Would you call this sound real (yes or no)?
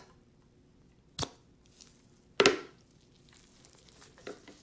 yes